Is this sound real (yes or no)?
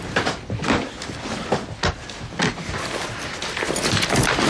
yes